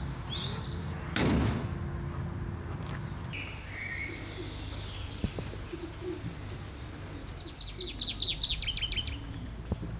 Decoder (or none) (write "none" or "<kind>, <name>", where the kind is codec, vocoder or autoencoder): none